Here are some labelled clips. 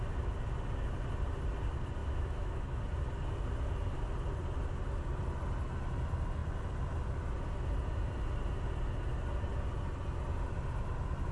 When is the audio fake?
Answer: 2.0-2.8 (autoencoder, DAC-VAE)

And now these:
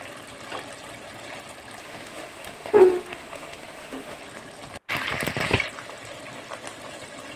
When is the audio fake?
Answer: 1.8-4.2 (autoencoder, DAC-VAE)

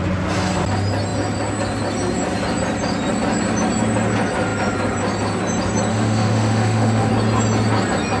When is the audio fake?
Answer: 5.9-7.1 (autoencoder, DAC-VAE)

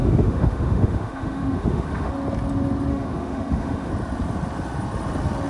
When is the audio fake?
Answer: 0.0-2.1 (autoencoder, DAC-VAE); 2.9-3.9

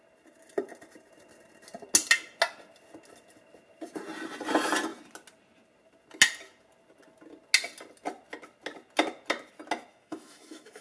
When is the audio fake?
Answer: 9.9-10.8 (autoencoder, DAC-VAE)

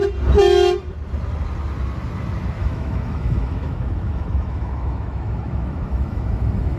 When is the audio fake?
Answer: 2.6-6.8 (autoencoder, DAC-VAE)

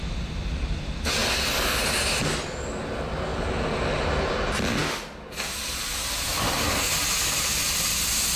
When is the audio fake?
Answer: none